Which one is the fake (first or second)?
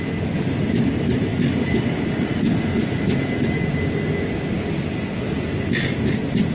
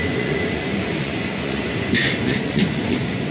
second